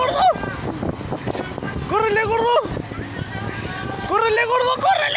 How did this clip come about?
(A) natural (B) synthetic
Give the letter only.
A